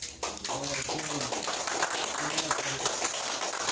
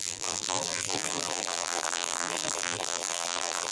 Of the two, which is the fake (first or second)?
second